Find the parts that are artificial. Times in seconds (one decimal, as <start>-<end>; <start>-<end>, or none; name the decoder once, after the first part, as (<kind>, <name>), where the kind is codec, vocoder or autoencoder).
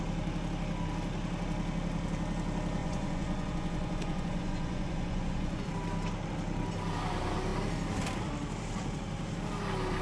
2.8-5.7 (vocoder, Vocos)